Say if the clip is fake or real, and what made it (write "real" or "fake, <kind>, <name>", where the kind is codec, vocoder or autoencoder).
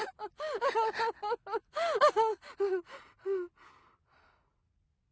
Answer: real